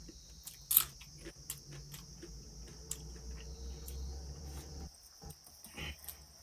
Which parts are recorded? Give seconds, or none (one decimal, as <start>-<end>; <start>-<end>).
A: 0.0-6.4